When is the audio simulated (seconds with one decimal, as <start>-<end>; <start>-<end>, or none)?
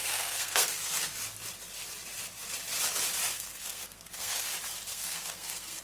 0.0-1.1; 3.3-4.5; 4.9-5.8